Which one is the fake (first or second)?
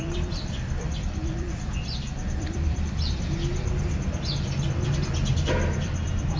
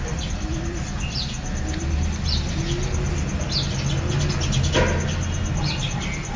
first